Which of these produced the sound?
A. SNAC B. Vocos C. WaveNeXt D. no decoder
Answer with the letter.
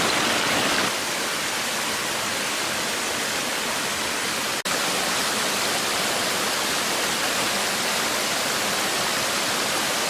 D